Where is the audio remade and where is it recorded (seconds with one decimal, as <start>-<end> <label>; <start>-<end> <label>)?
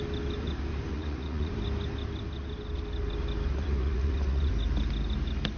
0.0-0.9 recorded; 0.9-1.5 remade; 1.5-3.5 recorded; 3.5-4.5 remade; 4.5-5.6 recorded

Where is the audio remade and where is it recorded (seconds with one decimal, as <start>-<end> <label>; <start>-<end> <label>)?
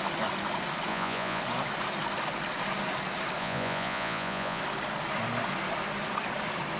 0.0-0.9 recorded; 0.9-1.4 remade; 1.4-3.4 recorded; 3.4-4.6 remade; 4.6-6.8 recorded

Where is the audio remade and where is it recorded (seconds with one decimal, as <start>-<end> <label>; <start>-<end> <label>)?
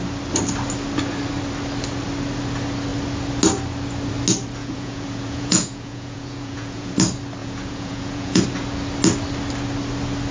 0.0-4.6 recorded; 4.6-6.9 remade; 6.9-7.4 recorded; 7.4-8.4 remade; 8.4-10.3 recorded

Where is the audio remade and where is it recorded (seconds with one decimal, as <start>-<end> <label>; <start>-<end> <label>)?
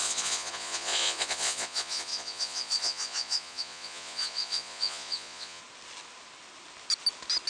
0.0-5.6 remade; 5.6-7.5 recorded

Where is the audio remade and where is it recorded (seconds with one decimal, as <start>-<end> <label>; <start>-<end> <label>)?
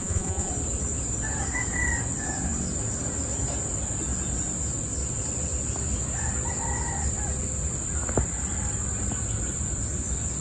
0.0-0.5 remade; 0.5-10.4 recorded